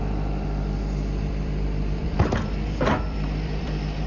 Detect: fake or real fake